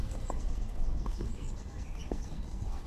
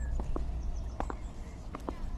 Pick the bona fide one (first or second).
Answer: second